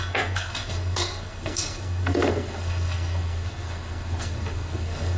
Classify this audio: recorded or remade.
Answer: remade